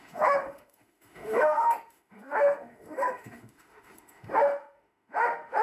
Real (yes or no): no